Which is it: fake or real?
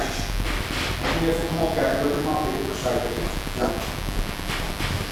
real